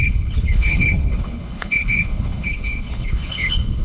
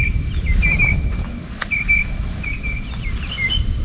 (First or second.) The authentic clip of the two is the second